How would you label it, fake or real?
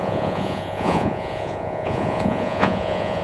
fake